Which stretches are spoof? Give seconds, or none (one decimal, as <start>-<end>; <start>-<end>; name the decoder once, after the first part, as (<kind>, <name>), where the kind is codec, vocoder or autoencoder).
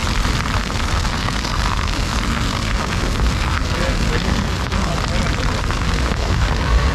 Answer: 0.6-4.9 (codec, SNAC); 5.6-6.9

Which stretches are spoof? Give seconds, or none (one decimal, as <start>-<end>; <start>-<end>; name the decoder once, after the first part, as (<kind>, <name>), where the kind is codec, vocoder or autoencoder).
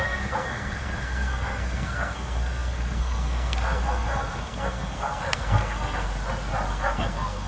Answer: 0.0-6.1 (codec, SNAC); 6.7-7.5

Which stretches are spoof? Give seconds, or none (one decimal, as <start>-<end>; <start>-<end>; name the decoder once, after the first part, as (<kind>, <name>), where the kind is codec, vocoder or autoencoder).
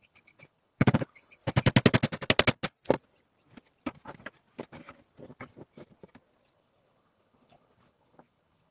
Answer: 0.0-1.4 (codec, HILCodec); 6.5-8.7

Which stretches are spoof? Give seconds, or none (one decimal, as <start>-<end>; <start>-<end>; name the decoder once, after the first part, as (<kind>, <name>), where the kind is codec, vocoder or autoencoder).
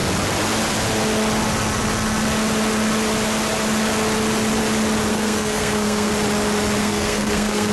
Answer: 5.1-6.1 (codec, SNAC); 6.8-7.7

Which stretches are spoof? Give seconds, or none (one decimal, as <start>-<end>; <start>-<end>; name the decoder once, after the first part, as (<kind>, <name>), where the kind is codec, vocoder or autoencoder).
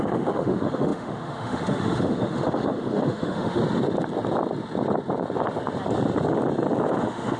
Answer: 0.0-3.6 (autoencoder, DAC-VAE); 7.0-7.4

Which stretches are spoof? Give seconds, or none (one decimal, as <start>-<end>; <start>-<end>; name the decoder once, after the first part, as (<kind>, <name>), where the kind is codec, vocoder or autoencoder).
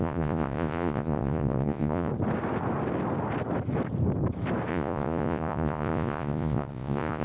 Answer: 0.0-2.1 (vocoder, Vocos); 4.7-7.2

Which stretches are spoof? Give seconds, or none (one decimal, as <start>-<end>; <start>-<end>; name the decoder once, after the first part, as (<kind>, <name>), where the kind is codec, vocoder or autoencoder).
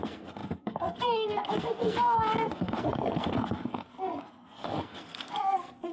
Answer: 0.0-5.9 (codec, SNAC)